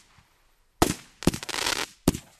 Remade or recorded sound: recorded